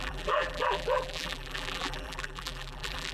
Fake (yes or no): yes